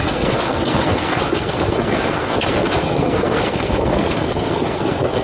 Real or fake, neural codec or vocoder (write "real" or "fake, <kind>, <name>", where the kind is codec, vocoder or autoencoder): fake, codec, SNAC